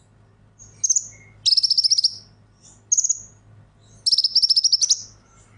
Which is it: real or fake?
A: real